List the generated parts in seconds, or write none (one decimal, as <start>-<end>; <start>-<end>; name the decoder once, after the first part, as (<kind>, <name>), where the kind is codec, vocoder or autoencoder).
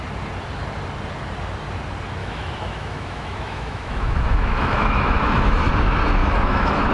2.2-5.7 (autoencoder, DAC-VAE); 6.2-6.9